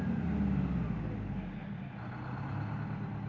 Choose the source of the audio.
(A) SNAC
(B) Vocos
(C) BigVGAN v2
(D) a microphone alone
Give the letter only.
D